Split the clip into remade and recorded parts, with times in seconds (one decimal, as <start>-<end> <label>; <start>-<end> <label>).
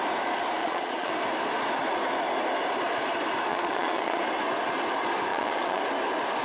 0.0-0.6 recorded; 0.6-1.1 remade; 1.1-3.5 recorded; 3.5-4.2 remade; 4.2-5.3 recorded; 5.3-5.8 remade; 5.8-6.4 recorded